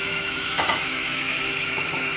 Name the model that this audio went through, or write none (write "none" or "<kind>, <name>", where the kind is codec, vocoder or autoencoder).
autoencoder, DAC-VAE